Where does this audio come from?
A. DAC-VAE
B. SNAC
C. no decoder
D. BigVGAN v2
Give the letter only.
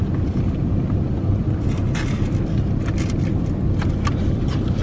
C